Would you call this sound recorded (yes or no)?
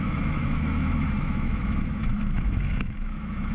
no